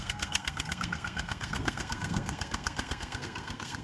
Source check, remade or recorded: remade